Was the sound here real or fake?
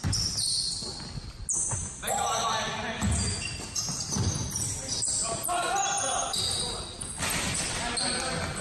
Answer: real